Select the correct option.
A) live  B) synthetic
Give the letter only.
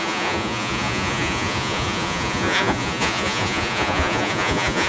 B